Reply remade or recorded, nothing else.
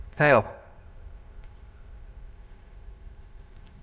remade